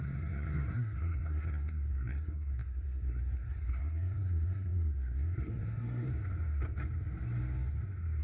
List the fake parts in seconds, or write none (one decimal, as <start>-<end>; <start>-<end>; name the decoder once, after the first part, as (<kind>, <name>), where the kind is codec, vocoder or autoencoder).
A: 0.0-6.1 (codec, SNAC)